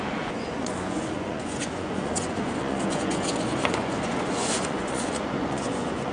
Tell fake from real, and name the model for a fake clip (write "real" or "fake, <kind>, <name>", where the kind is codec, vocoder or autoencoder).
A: fake, vocoder, Vocos